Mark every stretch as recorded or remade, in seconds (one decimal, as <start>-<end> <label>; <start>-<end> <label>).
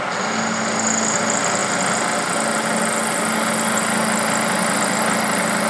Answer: 0.0-5.7 recorded